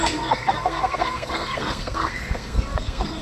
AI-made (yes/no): yes